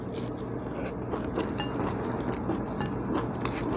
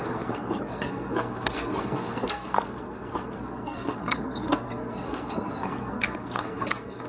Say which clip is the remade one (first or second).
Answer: second